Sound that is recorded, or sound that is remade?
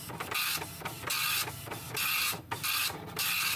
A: recorded